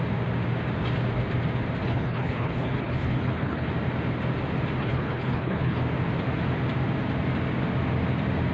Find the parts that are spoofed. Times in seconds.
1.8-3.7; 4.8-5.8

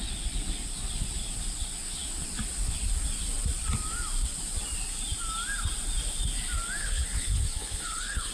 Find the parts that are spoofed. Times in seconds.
6.8-8.3